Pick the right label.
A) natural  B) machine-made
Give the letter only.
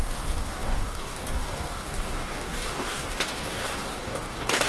B